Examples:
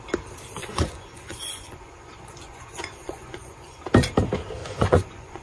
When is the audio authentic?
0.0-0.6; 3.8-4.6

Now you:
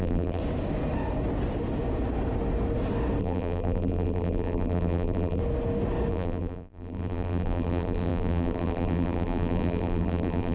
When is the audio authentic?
0.4-3.2; 5.4-6.1

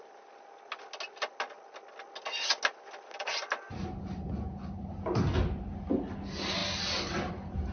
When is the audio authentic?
0.0-7.7

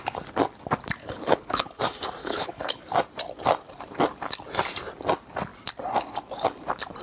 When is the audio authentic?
0.0-1.0; 1.8-2.2; 2.8-7.0